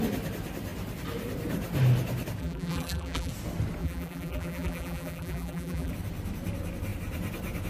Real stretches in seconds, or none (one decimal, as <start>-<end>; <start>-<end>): 0.0-2.4; 3.3-3.8; 5.9-7.7